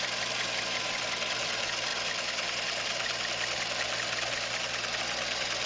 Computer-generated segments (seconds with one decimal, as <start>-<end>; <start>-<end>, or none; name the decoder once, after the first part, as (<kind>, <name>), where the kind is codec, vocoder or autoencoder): none